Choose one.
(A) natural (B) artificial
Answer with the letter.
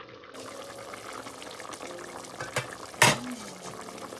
A